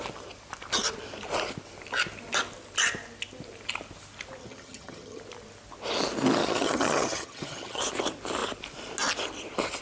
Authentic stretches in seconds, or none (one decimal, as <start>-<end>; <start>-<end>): 0.0-4.4; 5.2-6.4; 7.8-9.8